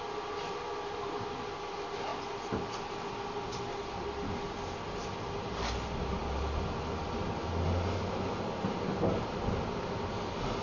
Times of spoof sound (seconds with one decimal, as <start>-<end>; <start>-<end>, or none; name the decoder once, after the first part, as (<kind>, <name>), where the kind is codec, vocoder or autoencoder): none